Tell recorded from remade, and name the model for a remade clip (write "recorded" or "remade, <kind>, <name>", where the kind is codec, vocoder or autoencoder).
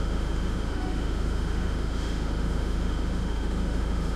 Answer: remade, autoencoder, DAC-VAE